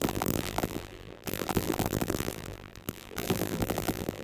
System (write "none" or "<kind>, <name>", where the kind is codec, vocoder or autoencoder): vocoder, BigVGAN v2